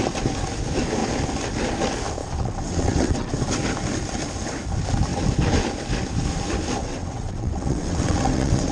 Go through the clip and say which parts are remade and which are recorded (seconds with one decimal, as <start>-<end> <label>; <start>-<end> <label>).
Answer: 0.0-2.2 recorded; 2.2-3.3 remade; 3.3-6.8 recorded; 6.8-8.7 remade